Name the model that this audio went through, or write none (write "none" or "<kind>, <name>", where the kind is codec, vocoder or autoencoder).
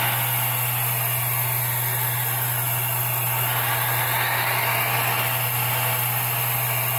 none